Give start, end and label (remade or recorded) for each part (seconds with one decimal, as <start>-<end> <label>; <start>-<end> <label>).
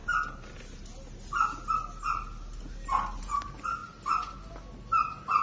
0.0-5.4 recorded